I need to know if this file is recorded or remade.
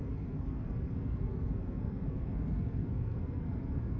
remade